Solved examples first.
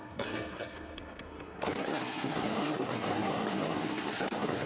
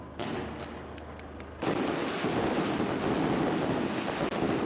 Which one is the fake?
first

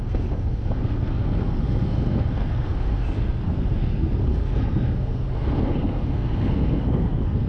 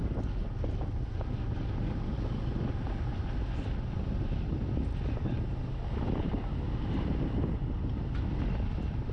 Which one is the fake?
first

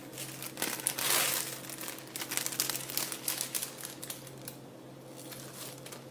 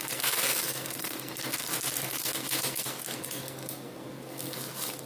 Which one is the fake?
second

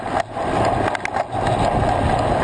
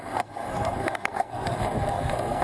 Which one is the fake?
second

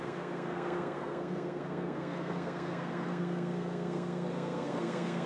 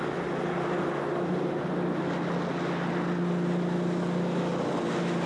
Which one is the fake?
first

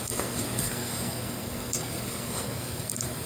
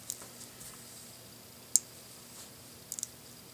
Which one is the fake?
first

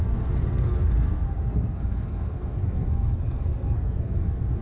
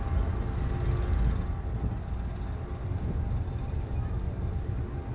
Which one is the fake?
first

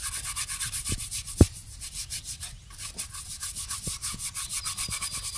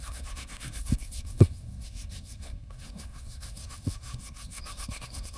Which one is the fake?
second